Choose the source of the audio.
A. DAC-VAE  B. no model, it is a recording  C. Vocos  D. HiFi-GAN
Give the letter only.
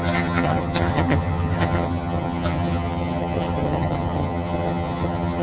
D